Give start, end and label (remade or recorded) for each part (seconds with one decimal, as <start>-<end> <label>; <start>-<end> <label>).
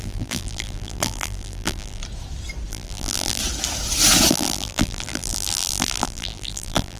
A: 0.0-2.0 remade; 2.0-2.7 recorded; 2.7-3.4 remade; 3.4-4.3 recorded; 4.3-7.0 remade